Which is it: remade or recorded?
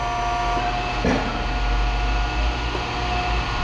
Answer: recorded